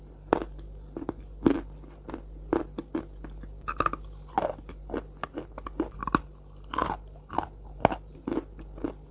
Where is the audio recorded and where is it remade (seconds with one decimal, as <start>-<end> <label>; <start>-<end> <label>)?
0.0-9.1 recorded

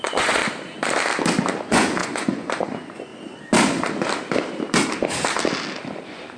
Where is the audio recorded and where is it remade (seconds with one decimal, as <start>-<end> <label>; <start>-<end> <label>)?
0.0-0.4 remade; 0.4-1.6 recorded; 1.6-3.1 remade; 3.1-6.0 recorded; 6.0-6.4 remade